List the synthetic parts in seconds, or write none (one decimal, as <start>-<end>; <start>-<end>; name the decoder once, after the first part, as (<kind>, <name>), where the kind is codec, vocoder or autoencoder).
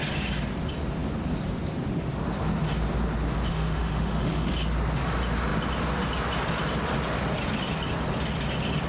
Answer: 3.5-4.5 (autoencoder, DAC-VAE)